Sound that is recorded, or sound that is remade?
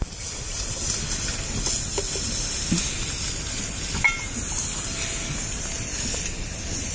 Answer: recorded